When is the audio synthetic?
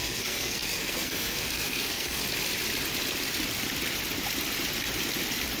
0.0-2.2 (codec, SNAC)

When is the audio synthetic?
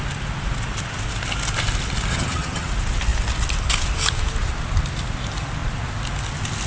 2.1-2.7 (vocoder, HiFi-GAN)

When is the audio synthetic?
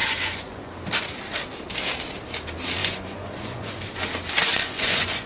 0.0-0.7 (vocoder, Vocos); 2.8-4.0; 4.4-5.3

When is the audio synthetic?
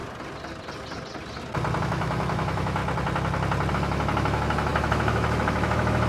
1.8-2.8 (autoencoder, DAC-VAE); 3.7-6.1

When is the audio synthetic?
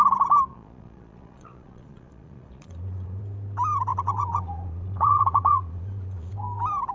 0.5-3.2 (vocoder, Vocos); 3.9-6.3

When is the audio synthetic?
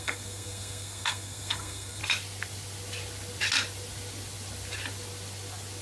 0.0-2.0 (codec, SNAC)